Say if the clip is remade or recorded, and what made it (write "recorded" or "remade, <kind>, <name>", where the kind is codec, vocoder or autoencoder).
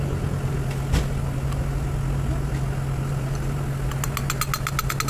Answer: recorded